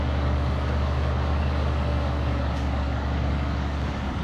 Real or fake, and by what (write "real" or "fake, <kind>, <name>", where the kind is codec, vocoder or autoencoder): fake, codec, DAC